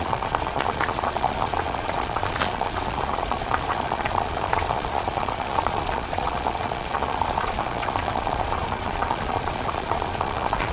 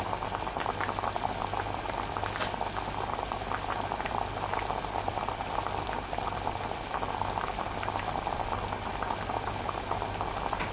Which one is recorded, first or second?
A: second